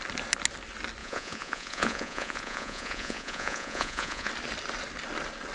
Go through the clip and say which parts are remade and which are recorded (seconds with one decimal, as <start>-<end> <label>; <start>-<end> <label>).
0.0-1.0 recorded; 1.0-4.3 remade; 4.3-5.5 recorded